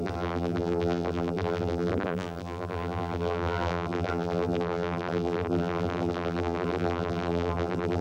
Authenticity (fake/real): fake